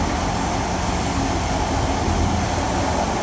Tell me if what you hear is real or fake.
real